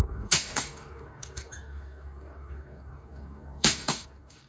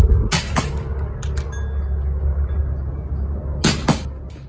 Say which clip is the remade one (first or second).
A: first